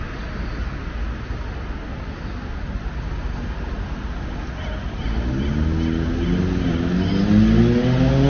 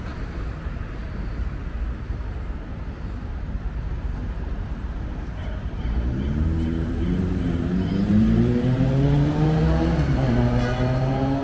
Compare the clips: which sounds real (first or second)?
first